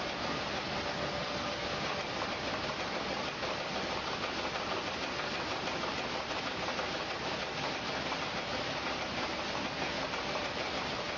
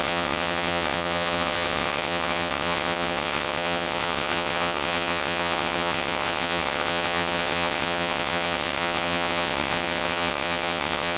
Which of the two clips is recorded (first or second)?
first